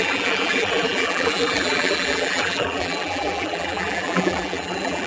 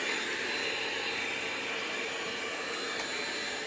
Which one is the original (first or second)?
second